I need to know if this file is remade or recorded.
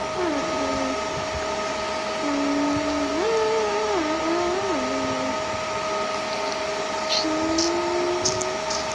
recorded